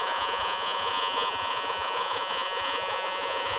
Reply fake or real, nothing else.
fake